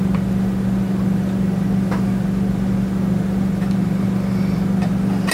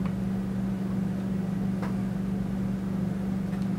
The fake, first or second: first